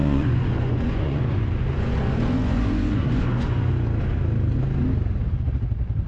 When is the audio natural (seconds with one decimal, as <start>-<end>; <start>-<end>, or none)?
3.7-6.1